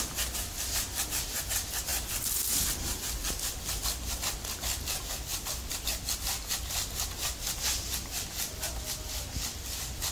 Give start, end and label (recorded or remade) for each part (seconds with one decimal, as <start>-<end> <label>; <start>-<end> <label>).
0.0-10.1 recorded